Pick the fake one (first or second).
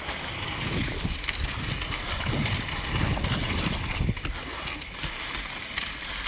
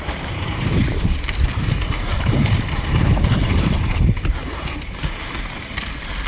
second